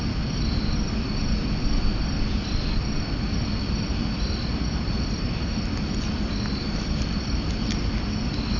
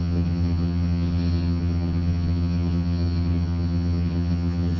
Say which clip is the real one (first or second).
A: first